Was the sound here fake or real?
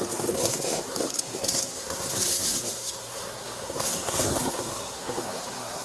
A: fake